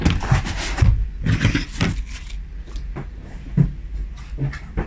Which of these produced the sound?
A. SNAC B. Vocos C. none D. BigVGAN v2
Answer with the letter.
C